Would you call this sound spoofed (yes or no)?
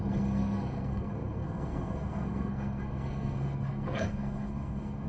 yes